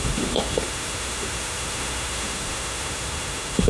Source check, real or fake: fake